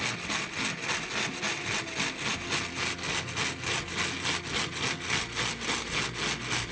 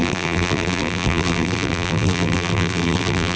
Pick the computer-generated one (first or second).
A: second